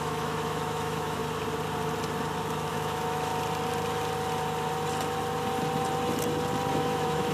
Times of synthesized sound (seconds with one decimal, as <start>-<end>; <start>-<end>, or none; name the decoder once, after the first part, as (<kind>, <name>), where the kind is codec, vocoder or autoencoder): 0.0-1.2 (autoencoder, DAC-VAE); 2.7-3.3; 6.7-7.3